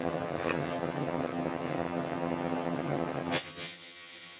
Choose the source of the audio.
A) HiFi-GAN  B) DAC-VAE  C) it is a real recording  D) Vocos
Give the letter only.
A